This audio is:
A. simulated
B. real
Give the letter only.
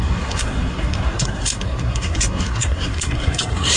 A